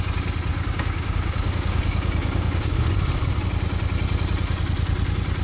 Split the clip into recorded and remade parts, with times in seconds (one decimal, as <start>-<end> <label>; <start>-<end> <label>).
0.0-0.5 recorded; 0.5-2.9 remade; 2.9-5.4 recorded